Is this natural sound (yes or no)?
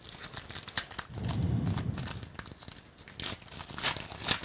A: yes